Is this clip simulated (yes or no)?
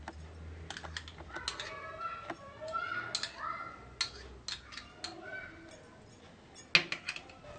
no